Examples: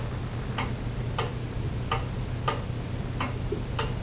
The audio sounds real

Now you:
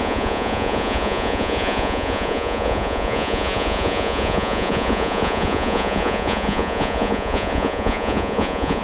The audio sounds fake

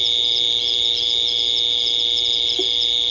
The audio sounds real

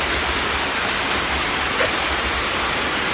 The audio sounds real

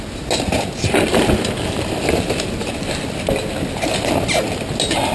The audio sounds real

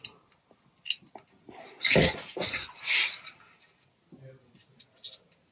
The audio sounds real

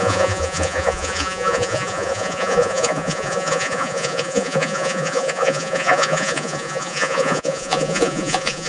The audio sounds fake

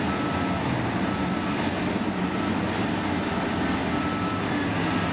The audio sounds real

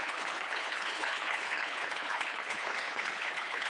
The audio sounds fake